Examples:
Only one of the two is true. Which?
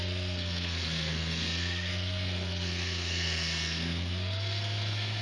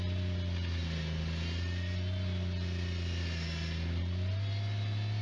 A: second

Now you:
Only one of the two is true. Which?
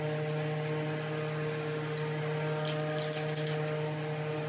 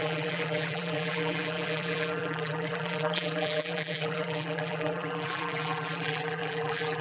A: first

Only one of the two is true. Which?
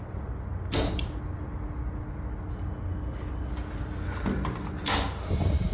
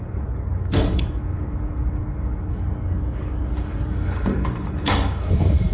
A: first